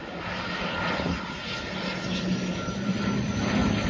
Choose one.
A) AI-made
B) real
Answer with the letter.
B